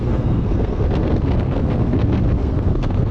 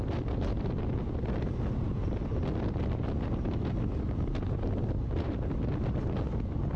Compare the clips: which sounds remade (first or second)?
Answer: first